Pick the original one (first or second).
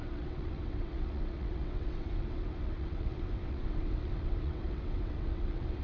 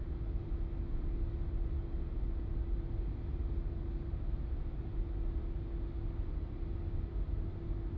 second